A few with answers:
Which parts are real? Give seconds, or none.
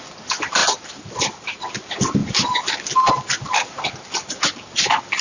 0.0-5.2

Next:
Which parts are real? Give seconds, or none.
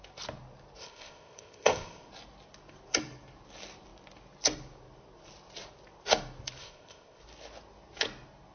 0.0-0.8; 2.1-6.6; 7.2-8.5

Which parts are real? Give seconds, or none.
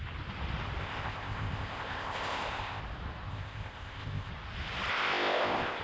0.0-0.8; 2.8-3.3; 4.3-4.9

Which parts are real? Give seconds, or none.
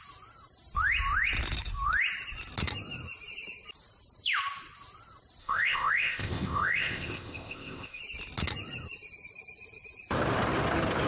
0.0-5.4; 8.0-11.1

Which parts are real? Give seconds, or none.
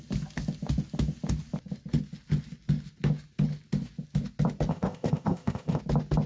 0.0-4.7; 5.8-6.3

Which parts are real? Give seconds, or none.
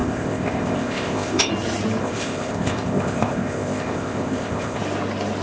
1.5-2.0; 4.8-5.4